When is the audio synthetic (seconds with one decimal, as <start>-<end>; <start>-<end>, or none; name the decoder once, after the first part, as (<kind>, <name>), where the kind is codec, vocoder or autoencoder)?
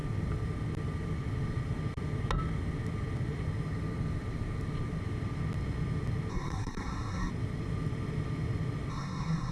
6.3-7.3 (codec, SNAC); 8.9-9.5